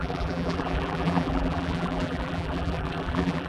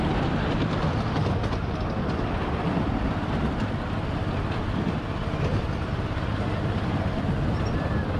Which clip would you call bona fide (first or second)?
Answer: second